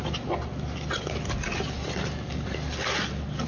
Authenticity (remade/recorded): recorded